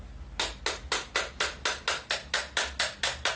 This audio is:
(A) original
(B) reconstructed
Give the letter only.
A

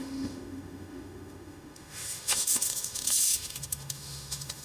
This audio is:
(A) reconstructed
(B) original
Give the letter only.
A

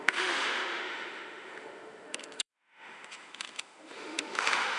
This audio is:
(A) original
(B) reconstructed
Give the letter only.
B